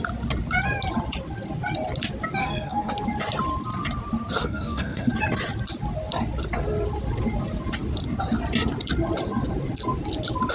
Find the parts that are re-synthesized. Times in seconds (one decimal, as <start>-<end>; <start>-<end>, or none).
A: 2.4-2.9; 4.4-5.1